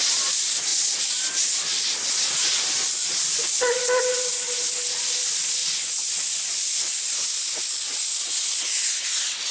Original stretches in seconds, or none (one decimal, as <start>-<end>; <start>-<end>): 0.0-5.6; 6.5-9.5